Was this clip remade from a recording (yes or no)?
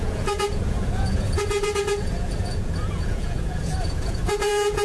yes